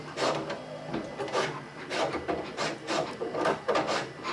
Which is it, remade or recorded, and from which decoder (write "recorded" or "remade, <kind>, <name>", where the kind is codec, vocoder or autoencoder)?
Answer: recorded